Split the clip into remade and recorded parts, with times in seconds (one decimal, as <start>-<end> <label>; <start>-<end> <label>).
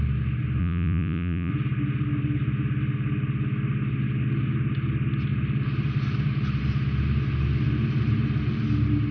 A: 0.0-0.6 recorded; 0.6-1.5 remade; 1.5-9.1 recorded